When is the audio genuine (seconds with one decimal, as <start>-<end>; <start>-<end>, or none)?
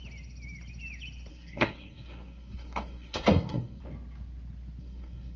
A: 0.0-1.3; 3.8-4.8